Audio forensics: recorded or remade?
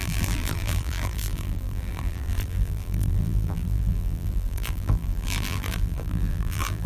remade